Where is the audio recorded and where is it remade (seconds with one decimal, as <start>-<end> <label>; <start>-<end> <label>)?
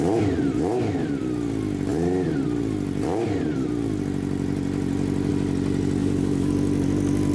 0.0-6.0 recorded; 6.0-6.5 remade; 6.5-7.3 recorded